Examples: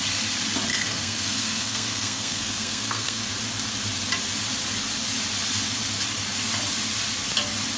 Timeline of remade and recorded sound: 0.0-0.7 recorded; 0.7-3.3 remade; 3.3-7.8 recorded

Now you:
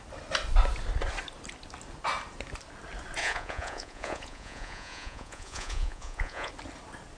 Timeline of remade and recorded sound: 0.0-3.2 recorded; 3.2-6.5 remade; 6.5-7.2 recorded